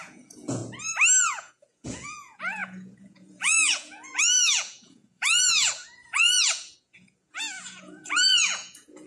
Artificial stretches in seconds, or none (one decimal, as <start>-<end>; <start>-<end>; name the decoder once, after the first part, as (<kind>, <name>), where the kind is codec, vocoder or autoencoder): 0.0-0.6 (vocoder, Vocos); 1.2-9.1